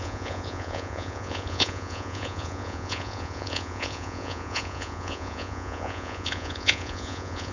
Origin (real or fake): fake